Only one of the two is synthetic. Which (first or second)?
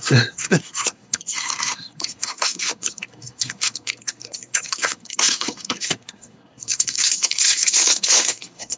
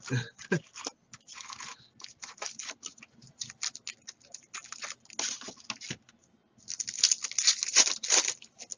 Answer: first